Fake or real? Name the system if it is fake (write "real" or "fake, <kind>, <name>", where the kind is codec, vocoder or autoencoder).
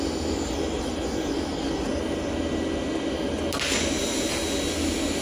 real